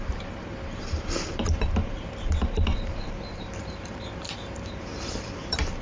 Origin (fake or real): fake